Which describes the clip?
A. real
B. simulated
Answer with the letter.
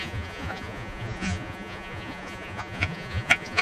B